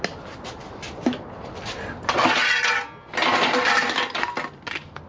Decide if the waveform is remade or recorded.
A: recorded